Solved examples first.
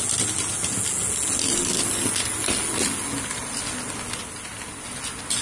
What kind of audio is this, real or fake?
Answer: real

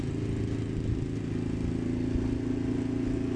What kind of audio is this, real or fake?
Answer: real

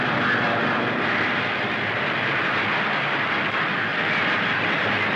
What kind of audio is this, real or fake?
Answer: real